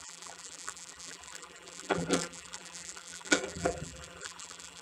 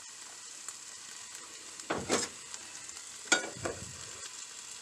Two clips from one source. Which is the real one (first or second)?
second